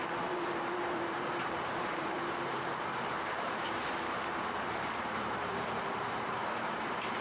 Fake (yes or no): yes